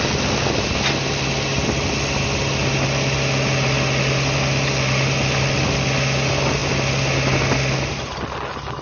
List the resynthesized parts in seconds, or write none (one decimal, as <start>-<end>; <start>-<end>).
none